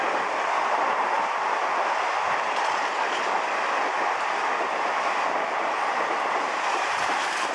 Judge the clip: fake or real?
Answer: real